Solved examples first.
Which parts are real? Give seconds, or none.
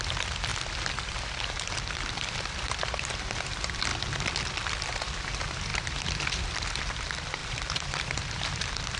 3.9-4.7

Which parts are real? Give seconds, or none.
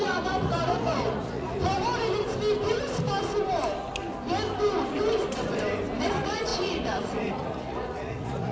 1.7-6.0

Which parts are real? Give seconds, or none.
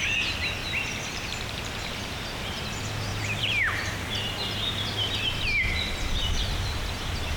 0.0-0.6; 2.6-3.1; 5.1-7.4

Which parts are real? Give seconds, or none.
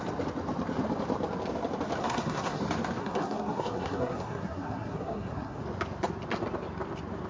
0.0-2.0; 2.6-3.0; 5.6-7.3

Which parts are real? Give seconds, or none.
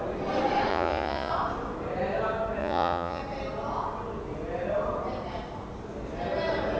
0.0-0.7; 1.3-2.6; 3.2-6.8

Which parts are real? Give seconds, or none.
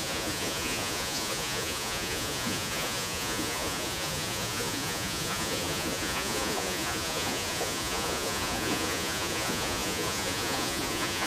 none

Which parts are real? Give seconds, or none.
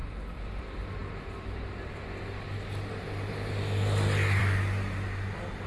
0.0-5.7